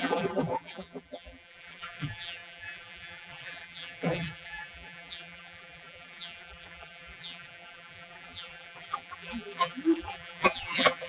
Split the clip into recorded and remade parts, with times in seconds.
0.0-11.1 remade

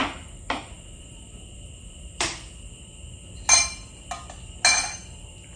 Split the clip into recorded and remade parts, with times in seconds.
0.0-2.8 remade; 2.8-5.0 recorded; 5.0-5.6 remade

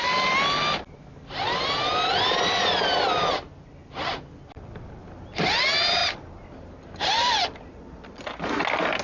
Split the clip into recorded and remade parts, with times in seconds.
0.0-9.0 recorded

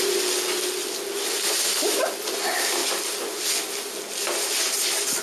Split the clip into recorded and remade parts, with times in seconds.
0.0-5.2 recorded

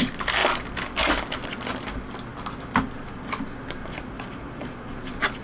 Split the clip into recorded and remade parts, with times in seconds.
0.0-5.4 recorded

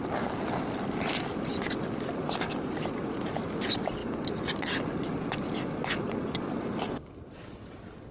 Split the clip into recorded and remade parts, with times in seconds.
0.0-8.1 recorded